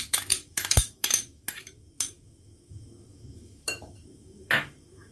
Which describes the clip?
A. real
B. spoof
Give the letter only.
B